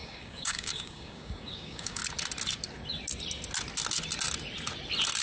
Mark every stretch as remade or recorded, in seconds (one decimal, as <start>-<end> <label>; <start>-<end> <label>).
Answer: 0.0-2.0 remade; 2.0-5.2 recorded